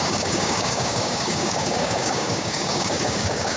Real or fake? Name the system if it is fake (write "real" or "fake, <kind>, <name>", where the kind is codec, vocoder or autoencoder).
fake, codec, DAC